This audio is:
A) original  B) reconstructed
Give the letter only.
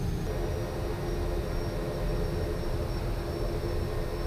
A